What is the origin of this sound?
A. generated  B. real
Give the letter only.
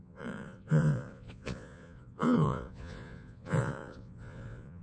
A